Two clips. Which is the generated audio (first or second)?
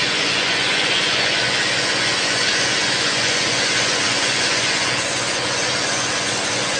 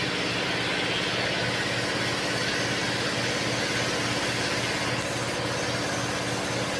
first